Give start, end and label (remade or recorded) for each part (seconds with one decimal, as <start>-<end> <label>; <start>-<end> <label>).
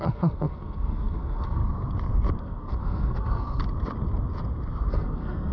0.0-1.6 remade; 1.6-2.4 recorded; 2.4-3.6 remade; 3.6-4.9 recorded; 4.9-5.5 remade